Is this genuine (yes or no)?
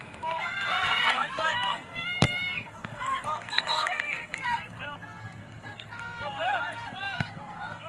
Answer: no